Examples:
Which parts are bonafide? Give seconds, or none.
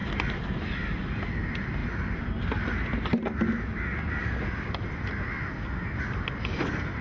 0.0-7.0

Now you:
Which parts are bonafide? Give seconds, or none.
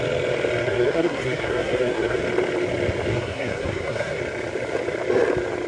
0.0-0.6; 2.2-3.1; 4.2-5.7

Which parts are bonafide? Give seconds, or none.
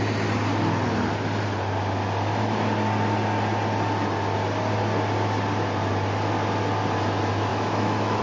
0.0-7.5